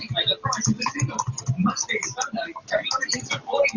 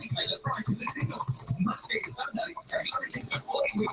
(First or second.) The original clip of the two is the first